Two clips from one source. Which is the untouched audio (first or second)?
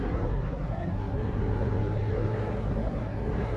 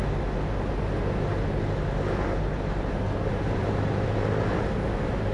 second